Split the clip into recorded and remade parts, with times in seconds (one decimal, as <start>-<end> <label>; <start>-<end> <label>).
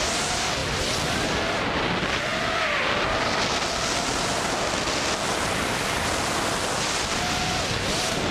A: 0.0-8.3 recorded